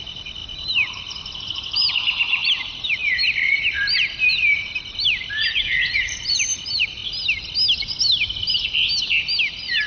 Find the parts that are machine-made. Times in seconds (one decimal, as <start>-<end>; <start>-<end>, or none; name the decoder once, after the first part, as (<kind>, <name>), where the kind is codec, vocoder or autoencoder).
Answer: 0.0-7.0 (vocoder, BigVGAN v2); 9.4-9.9